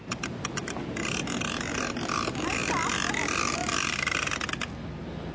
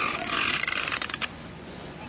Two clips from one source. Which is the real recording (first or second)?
first